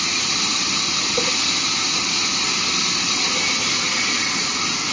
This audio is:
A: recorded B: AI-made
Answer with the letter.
A